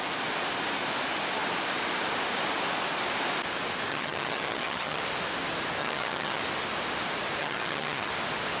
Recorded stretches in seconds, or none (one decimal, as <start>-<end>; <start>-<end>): 0.0-3.9; 5.0-5.8; 6.4-7.4; 8.1-8.6